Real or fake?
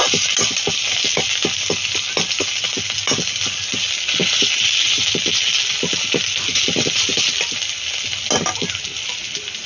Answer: real